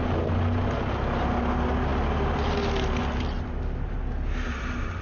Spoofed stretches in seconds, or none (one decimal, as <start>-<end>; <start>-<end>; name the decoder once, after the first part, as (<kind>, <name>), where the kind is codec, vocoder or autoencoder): none